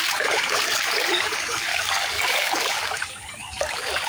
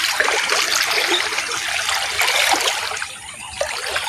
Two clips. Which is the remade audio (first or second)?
first